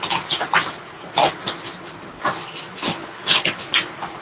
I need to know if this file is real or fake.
real